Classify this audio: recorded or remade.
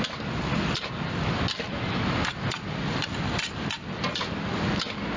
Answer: recorded